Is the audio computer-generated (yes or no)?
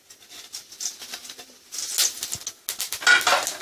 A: no